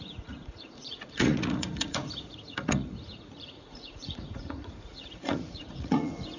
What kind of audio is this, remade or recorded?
remade